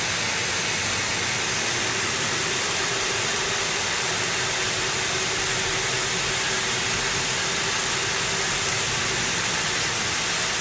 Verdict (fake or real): real